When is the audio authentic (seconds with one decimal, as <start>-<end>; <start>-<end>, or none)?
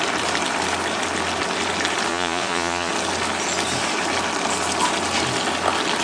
0.0-2.1; 2.9-6.0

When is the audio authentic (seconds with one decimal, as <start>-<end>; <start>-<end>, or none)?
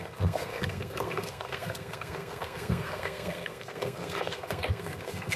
none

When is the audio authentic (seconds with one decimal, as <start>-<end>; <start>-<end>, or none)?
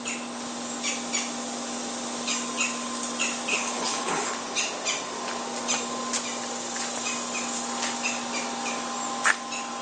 0.0-3.5; 4.3-9.8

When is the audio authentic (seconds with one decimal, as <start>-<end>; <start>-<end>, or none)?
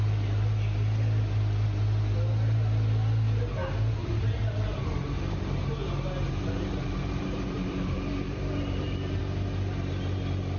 0.0-4.0; 9.2-10.6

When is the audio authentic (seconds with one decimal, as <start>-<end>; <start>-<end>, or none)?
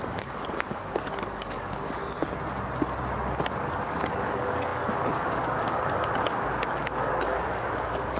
2.0-3.7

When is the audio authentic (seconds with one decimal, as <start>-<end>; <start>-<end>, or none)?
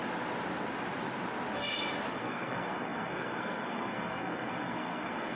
0.0-2.1